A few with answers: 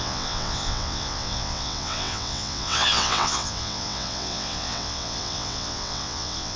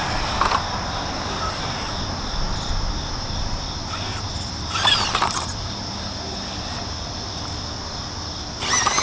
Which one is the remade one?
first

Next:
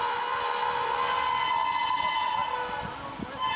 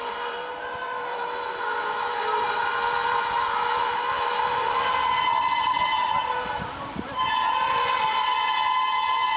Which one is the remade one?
second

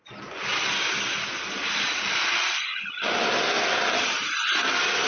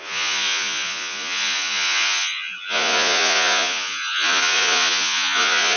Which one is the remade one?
second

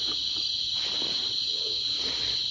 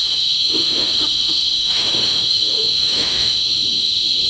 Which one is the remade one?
second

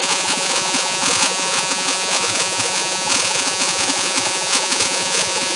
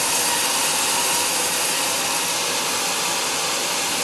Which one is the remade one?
first